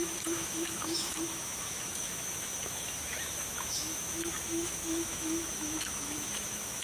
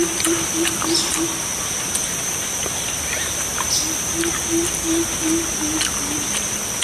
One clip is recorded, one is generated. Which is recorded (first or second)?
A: second